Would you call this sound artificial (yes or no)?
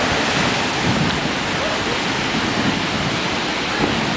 no